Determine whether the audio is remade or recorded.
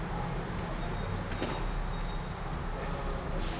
recorded